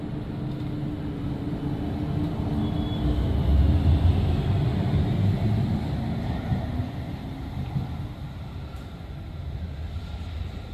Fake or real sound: real